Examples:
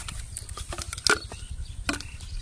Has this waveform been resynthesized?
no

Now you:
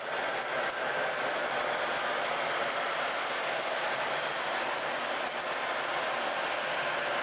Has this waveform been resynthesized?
no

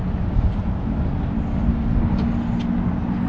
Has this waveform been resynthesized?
no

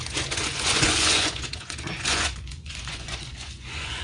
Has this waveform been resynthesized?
yes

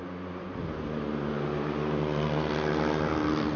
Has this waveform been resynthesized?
no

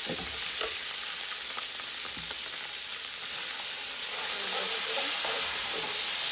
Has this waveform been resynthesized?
no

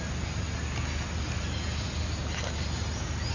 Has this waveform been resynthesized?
no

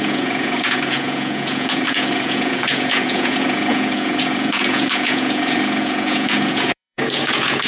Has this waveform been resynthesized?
yes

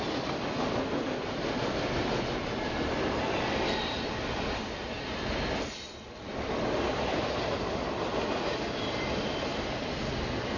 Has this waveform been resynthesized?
no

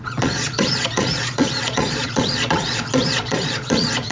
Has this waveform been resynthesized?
yes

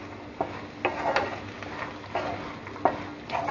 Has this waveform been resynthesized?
no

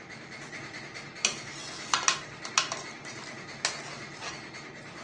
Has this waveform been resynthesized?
no